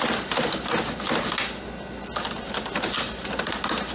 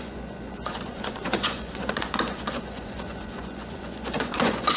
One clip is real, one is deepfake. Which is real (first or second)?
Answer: first